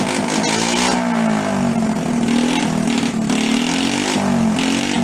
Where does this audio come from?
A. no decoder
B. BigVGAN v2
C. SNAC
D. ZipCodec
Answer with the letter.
A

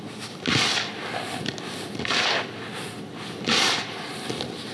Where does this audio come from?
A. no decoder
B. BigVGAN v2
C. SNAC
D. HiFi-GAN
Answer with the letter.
A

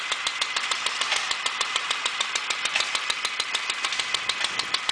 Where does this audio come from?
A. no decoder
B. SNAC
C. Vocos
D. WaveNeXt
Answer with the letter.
A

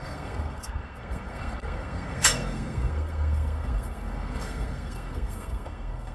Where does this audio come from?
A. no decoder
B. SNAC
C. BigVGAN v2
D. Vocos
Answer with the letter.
B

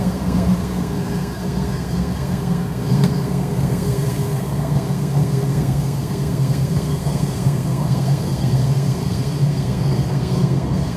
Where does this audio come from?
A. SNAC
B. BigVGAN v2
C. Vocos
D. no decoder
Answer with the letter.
A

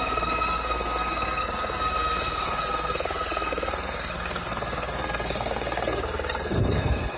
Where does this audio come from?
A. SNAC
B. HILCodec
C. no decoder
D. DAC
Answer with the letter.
A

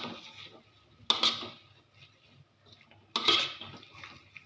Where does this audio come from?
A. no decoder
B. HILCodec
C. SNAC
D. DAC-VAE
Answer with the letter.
A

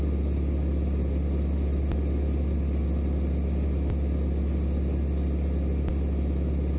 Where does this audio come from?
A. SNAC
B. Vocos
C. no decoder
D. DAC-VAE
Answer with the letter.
C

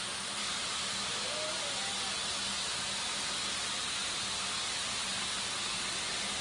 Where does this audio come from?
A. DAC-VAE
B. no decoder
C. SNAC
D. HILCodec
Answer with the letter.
B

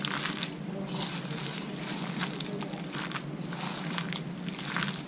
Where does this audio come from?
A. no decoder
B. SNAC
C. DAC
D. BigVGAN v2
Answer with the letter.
A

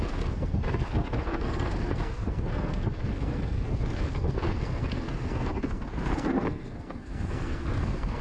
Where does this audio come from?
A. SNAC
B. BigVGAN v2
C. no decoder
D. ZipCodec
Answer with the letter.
A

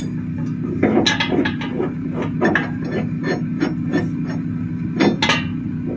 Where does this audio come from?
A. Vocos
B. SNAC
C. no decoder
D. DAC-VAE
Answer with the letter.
C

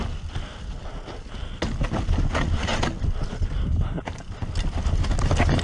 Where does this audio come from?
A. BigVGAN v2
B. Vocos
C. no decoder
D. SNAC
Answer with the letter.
C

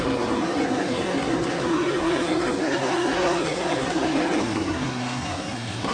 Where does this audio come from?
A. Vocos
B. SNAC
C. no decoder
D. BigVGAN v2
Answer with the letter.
B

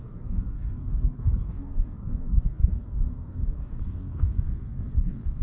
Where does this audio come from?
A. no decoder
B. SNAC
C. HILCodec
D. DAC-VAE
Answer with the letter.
B